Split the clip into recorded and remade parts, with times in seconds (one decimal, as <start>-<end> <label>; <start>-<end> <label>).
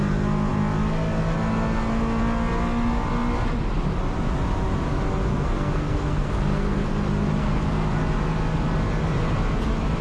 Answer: 0.0-5.3 recorded; 5.3-6.9 remade; 6.9-7.4 recorded; 7.4-8.0 remade; 8.0-10.0 recorded